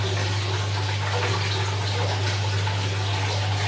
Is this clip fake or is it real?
real